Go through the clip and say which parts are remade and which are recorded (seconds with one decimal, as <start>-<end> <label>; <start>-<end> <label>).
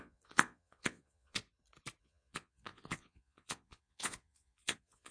0.0-1.4 remade; 1.4-2.0 recorded; 2.0-5.1 remade